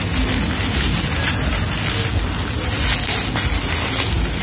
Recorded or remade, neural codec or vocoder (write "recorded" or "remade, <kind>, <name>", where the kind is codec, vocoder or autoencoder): recorded